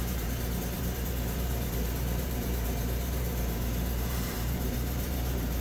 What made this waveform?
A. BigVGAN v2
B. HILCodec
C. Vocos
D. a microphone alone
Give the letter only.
A